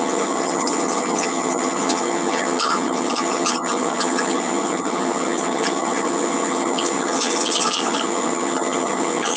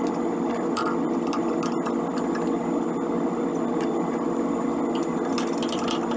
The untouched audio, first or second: second